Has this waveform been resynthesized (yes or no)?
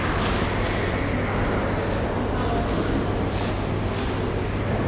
no